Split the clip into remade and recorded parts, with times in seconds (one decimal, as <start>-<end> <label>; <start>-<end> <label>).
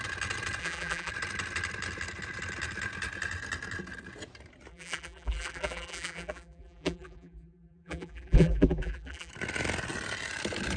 0.0-0.6 recorded; 0.6-1.1 remade; 1.1-4.7 recorded; 4.7-9.3 remade; 9.3-10.8 recorded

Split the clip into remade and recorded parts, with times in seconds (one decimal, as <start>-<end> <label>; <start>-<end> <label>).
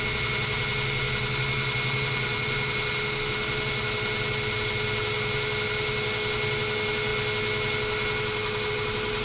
0.0-9.2 recorded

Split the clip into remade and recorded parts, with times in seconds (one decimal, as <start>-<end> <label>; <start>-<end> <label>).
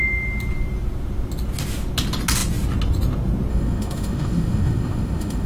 0.0-3.5 recorded; 3.5-5.5 remade